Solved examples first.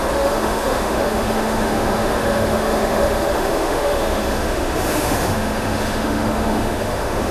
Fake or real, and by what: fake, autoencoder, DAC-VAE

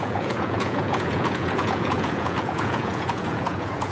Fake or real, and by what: fake, vocoder, Vocos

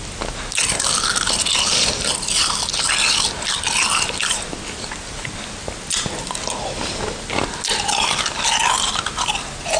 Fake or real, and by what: real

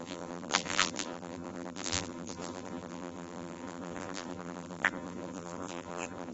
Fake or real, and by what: fake, vocoder, BigVGAN v2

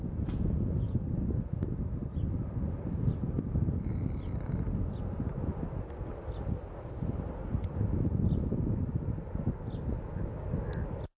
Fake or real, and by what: real